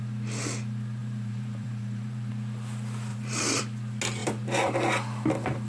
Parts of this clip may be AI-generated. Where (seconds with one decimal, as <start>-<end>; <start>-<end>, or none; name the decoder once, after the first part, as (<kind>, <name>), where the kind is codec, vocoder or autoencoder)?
1.0-2.3 (vocoder, BigVGAN v2); 3.1-3.6; 4.2-4.9